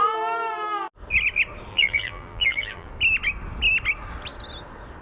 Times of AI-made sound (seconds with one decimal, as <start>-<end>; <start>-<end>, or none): 1.7-2.9